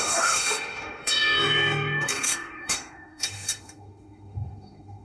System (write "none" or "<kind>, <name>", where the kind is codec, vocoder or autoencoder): autoencoder, DAC-VAE